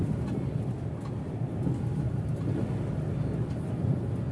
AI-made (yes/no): no